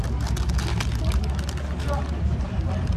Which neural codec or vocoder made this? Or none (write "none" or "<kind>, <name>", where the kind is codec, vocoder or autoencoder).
none